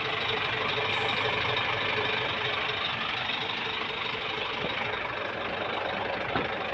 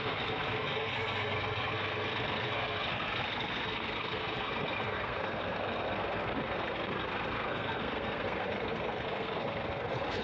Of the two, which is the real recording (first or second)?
first